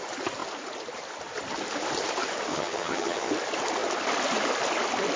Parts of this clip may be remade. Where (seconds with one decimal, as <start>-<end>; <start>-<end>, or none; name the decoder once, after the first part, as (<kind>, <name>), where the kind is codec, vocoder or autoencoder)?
2.5-3.3 (vocoder, HiFi-GAN)